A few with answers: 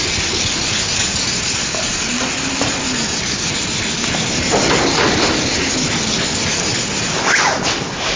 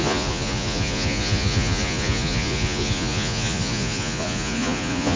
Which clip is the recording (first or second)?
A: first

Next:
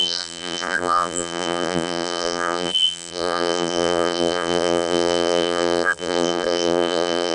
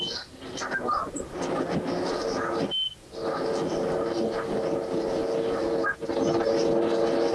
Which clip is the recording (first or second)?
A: second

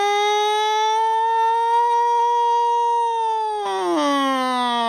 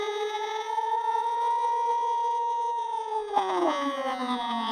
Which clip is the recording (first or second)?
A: first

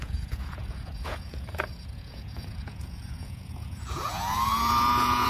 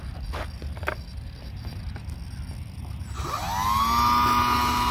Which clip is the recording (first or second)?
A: second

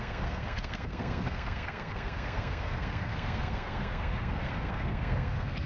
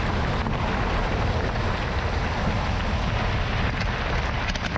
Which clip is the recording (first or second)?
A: second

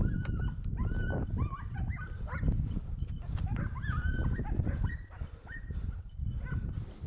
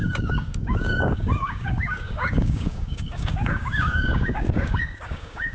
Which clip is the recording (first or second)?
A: first